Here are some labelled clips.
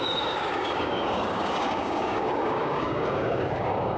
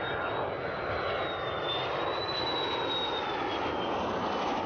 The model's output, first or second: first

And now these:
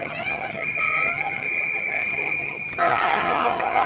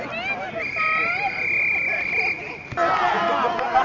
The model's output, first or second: first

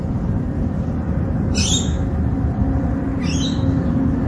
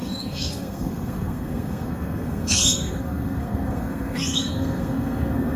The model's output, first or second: second